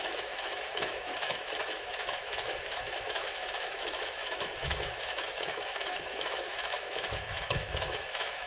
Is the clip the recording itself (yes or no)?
no